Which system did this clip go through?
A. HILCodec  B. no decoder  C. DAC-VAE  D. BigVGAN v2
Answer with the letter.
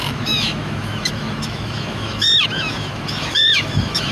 C